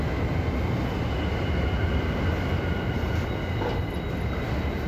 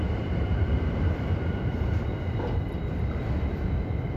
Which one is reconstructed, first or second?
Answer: second